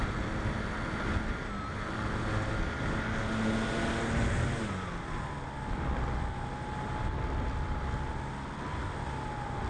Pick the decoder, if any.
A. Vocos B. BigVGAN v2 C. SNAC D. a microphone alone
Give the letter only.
D